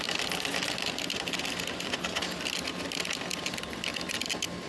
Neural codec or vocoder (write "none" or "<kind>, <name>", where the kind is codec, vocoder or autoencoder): none